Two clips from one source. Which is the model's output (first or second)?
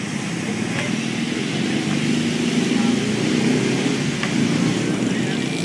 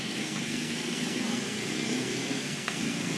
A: second